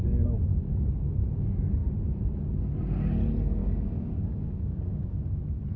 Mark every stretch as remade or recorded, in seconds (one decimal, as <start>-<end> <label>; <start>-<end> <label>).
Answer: 0.0-3.6 recorded; 3.6-5.1 remade; 5.1-5.8 recorded